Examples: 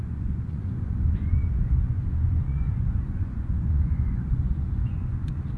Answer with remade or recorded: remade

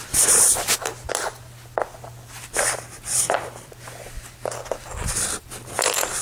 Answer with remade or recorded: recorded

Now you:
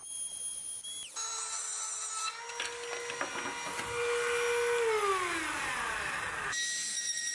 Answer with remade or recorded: recorded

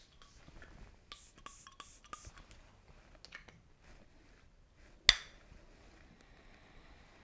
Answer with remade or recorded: recorded